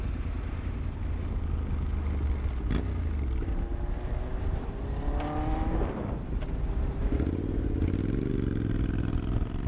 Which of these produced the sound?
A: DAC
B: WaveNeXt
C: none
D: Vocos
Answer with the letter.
C